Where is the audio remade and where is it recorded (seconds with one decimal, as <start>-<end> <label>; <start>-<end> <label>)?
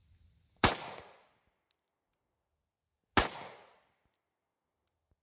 0.0-5.2 recorded